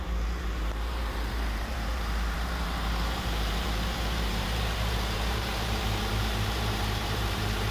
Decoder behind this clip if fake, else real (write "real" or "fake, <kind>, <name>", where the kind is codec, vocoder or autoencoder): fake, vocoder, BigVGAN v2